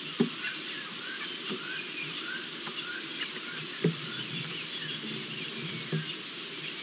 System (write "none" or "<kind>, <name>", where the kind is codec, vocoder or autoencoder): vocoder, BigVGAN v2